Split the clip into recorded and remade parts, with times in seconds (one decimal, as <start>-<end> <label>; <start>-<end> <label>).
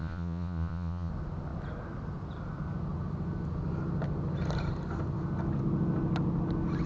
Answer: 0.0-1.1 remade; 1.1-6.9 recorded